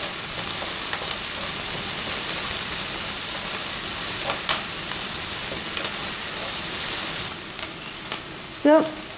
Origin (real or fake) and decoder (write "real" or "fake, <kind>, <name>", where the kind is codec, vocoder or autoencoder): real